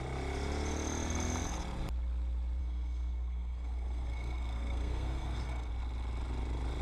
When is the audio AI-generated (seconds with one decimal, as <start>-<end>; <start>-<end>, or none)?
2.6-5.7